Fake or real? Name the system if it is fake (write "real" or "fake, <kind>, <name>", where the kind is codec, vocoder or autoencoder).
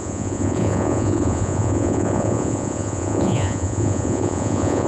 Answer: fake, vocoder, Vocos